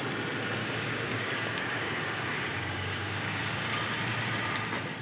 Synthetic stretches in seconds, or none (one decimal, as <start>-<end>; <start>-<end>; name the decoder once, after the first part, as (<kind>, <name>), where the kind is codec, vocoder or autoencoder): 0.6-3.6 (codec, DAC)